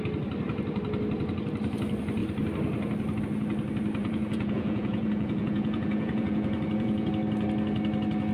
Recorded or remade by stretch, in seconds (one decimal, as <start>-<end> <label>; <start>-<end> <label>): 0.0-4.0 recorded; 4.0-7.1 remade; 7.1-8.3 recorded

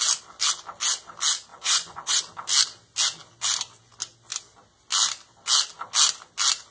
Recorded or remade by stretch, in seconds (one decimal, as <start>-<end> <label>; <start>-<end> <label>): 0.0-1.5 recorded; 1.5-2.2 remade; 2.2-6.7 recorded

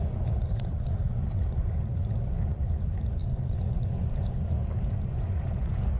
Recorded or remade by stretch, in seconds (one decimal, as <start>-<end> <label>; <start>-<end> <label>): 0.0-6.0 remade

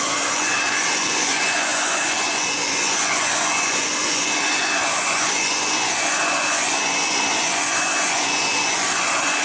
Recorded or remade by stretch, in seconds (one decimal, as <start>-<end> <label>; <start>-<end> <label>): 0.0-9.4 remade

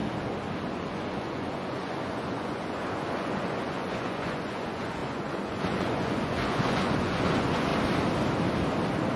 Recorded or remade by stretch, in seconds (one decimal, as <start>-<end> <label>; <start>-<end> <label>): 0.0-0.7 recorded; 0.7-7.7 remade; 7.7-9.2 recorded

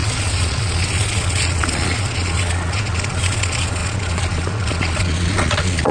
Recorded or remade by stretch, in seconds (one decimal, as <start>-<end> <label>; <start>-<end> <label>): 0.0-5.9 remade